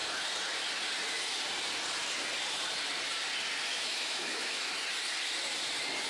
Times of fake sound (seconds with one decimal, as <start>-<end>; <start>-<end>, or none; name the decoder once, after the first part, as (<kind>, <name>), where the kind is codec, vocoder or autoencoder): 3.7-4.7 (autoencoder, DAC-VAE)